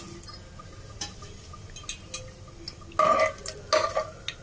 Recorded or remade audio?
recorded